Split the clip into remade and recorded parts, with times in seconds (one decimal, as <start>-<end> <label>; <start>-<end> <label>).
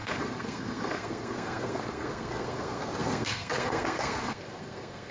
0.0-5.1 remade